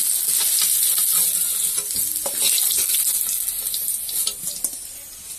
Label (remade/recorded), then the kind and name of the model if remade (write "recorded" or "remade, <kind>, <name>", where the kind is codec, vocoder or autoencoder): recorded